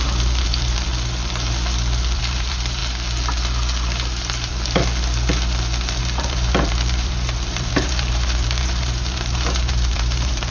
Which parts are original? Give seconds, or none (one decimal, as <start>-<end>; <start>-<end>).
0.9-2.2; 2.8-6.0